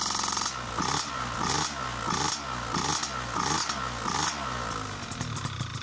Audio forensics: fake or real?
real